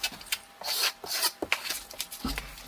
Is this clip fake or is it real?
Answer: real